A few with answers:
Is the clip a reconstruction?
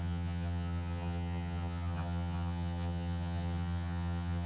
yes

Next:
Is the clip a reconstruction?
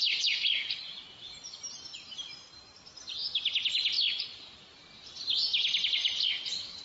no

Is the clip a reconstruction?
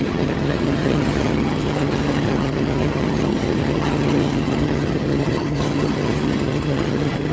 yes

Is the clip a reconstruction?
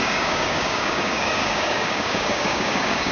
yes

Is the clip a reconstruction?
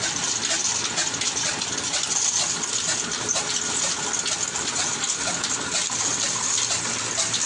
no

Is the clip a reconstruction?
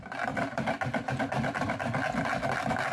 no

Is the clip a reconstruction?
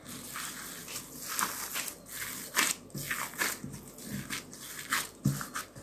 no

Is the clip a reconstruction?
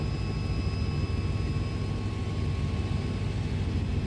no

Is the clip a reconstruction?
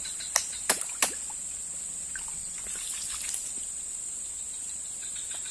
no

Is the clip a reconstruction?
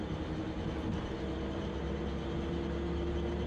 no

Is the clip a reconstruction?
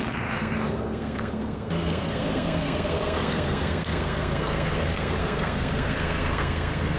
yes